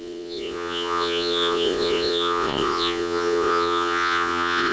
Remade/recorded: remade